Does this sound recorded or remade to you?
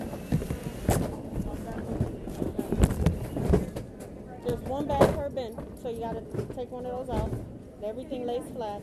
recorded